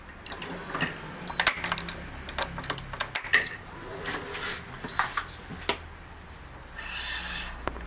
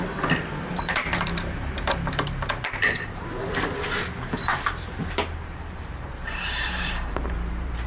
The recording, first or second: first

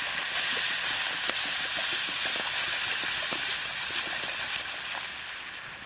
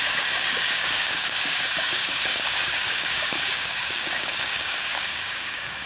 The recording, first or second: first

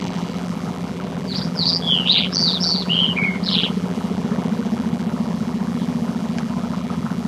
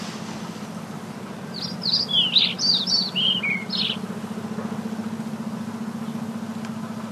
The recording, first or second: second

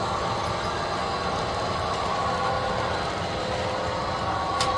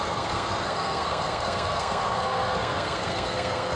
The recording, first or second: first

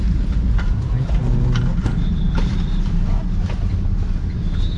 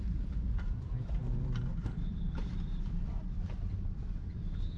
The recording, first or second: first